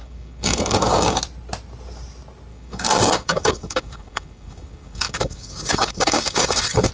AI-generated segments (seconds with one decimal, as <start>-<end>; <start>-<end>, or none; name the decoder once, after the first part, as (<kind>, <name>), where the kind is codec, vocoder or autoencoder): 0.0-1.2 (codec, DAC); 2.5-6.9